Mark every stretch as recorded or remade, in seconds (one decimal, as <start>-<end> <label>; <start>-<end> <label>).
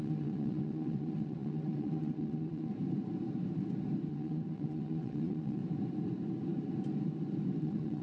0.0-2.7 remade; 2.7-4.1 recorded; 4.1-5.6 remade; 5.6-7.6 recorded; 7.6-8.0 remade